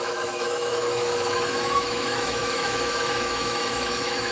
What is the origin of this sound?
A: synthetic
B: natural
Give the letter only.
A